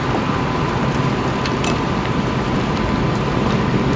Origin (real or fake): real